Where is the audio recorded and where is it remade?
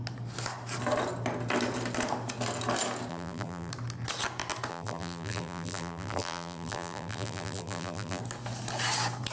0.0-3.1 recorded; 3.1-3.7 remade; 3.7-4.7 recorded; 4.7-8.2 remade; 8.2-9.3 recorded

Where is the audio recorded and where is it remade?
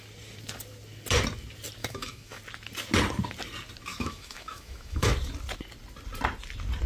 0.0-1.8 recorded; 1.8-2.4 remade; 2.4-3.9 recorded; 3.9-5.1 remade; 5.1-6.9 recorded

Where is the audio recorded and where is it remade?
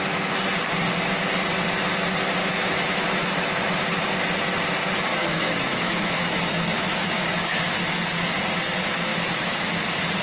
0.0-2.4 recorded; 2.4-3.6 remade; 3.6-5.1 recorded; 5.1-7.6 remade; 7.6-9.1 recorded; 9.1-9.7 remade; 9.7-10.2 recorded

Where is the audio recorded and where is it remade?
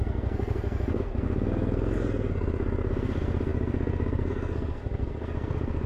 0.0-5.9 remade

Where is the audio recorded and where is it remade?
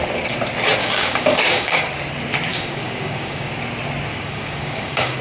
0.0-0.8 recorded; 0.8-1.9 remade; 1.9-2.5 recorded; 2.5-3.5 remade; 3.5-4.1 recorded; 4.1-5.2 remade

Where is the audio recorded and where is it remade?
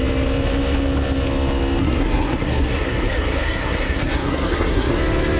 0.0-1.8 recorded; 1.8-5.0 remade; 5.0-5.4 recorded